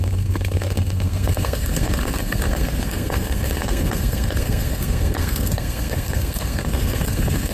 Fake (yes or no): yes